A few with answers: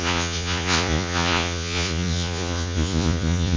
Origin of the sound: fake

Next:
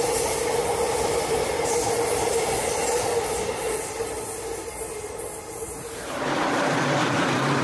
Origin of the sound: real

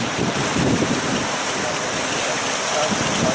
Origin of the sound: real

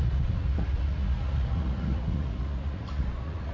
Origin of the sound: fake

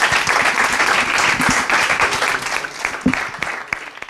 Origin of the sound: real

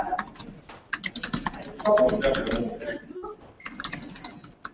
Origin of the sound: real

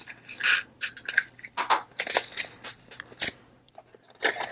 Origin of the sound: real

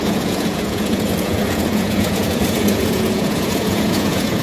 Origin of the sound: fake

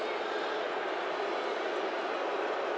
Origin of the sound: real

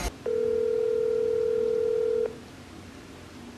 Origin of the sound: real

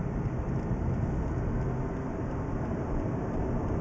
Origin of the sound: real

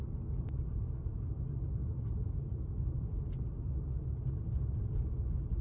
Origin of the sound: real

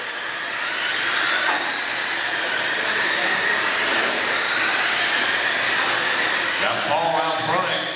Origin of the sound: real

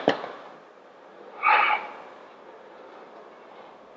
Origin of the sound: real